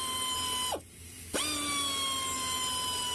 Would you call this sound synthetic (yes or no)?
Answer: no